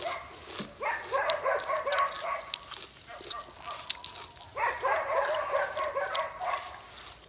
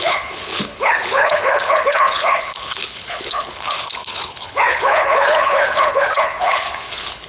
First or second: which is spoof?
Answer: second